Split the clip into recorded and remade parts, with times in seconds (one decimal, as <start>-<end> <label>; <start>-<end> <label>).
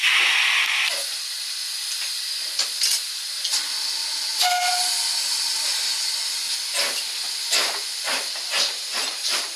0.0-9.6 recorded